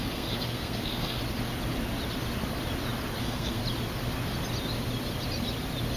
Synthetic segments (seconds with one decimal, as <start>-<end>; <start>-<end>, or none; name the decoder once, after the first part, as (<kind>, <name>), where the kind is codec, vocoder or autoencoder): 0.0-1.2 (codec, SNAC); 3.2-3.6

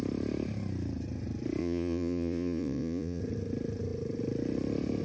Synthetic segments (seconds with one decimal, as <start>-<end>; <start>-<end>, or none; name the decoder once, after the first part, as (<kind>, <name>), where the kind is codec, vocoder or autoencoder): 1.6-3.2 (vocoder, Vocos)

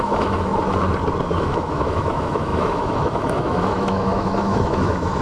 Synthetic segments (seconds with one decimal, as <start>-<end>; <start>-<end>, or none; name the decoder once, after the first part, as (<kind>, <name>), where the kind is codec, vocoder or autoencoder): 0.0-0.5 (autoencoder, DAC-VAE); 1.4-5.2

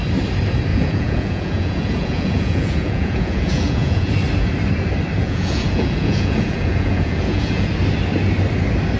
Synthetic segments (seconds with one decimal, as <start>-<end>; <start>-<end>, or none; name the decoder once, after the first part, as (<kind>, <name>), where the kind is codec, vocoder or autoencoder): 0.7-4.1 (vocoder, Vocos); 5.2-7.7

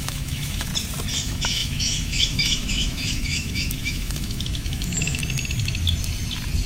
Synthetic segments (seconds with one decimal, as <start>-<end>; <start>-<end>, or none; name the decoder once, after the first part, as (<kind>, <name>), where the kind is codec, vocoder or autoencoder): 0.0-0.7 (autoencoder, DAC-VAE); 1.2-5.2

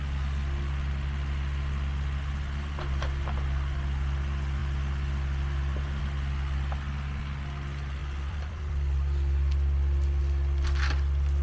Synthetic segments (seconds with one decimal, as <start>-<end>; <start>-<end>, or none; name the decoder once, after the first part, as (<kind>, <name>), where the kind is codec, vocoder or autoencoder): 8.0-10.2 (vocoder, BigVGAN v2)

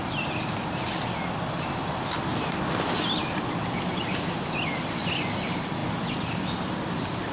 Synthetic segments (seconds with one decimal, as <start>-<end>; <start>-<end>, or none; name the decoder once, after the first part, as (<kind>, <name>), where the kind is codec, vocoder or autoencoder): none

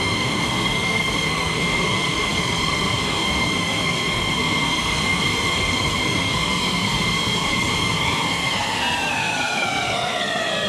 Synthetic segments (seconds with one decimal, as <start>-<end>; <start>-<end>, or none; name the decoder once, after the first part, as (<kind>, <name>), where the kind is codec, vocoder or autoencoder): 0.0-10.7 (codec, SNAC)